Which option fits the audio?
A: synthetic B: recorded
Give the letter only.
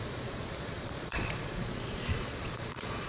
A